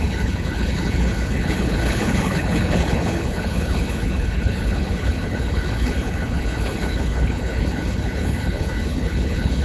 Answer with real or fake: fake